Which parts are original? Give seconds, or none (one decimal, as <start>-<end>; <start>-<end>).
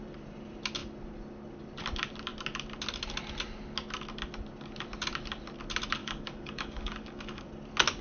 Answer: 0.0-6.0; 7.5-8.0